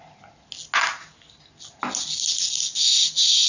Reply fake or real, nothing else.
real